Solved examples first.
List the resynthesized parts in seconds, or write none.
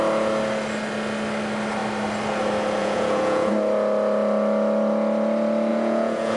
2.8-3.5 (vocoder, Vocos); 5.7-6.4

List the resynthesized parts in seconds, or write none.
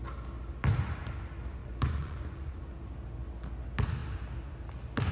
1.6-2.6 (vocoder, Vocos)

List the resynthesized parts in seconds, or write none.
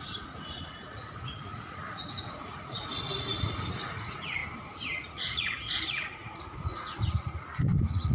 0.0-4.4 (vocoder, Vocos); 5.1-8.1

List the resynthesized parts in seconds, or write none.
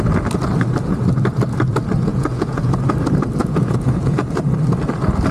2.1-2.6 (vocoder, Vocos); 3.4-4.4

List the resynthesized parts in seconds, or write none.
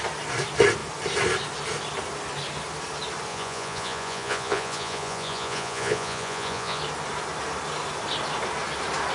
3.3-6.8 (vocoder, Vocos)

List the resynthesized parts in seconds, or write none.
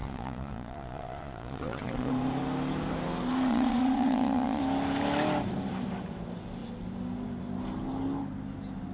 0.0-2.1 (vocoder, Vocos); 3.5-4.6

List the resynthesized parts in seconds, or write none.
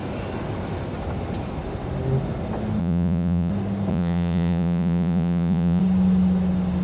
2.8-3.5 (vocoder, Vocos); 3.9-5.8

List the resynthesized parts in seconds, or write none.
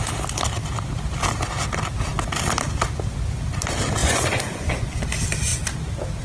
4.0-5.0 (vocoder, Vocos)